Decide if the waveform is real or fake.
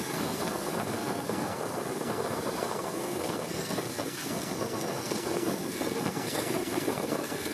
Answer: fake